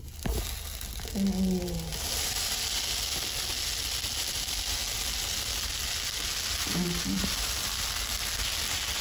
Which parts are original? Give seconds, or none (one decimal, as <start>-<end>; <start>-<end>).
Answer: 0.0-9.0